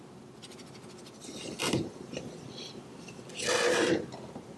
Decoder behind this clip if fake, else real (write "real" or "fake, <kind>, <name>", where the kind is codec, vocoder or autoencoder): real